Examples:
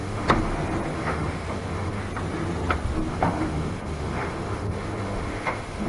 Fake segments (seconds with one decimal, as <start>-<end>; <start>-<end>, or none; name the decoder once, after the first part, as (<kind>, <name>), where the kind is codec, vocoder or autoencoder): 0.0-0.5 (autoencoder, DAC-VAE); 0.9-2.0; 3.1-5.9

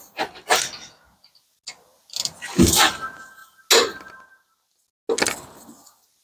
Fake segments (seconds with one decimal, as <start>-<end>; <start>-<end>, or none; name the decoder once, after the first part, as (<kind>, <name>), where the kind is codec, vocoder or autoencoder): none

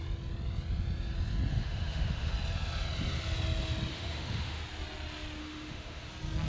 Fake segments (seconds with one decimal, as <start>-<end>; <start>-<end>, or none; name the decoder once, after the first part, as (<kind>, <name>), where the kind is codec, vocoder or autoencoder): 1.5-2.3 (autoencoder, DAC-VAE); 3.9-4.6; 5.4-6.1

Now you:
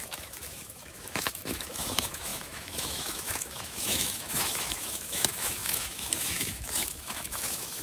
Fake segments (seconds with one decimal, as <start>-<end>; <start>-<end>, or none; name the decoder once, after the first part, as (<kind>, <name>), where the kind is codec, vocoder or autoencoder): 0.0-7.8 (autoencoder, DAC-VAE)